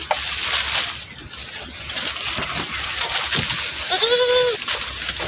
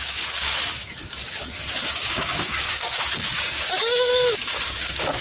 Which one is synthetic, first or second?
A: second